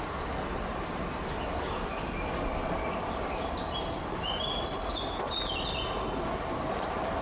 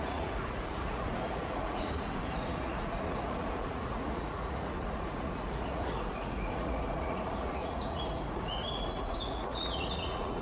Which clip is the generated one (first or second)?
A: second